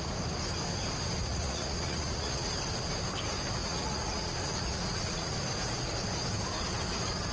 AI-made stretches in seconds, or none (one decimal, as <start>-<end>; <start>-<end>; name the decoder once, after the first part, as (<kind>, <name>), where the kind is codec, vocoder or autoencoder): 1.3-2.5 (vocoder, Vocos); 3.6-5.3